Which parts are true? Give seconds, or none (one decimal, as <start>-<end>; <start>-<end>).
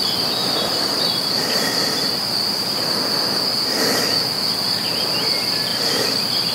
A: 0.0-0.4; 1.8-5.7